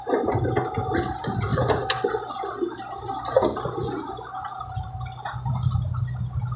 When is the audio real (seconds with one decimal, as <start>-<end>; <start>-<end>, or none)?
0.0-6.6